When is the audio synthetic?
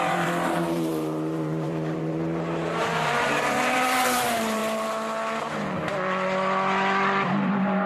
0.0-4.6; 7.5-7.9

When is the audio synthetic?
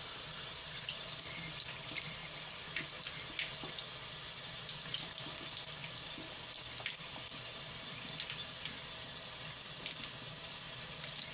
0.0-2.2; 4.5-5.8; 10.4-11.3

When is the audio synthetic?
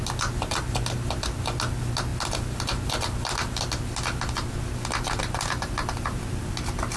none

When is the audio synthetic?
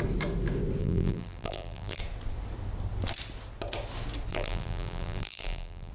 0.8-2.0; 4.3-5.9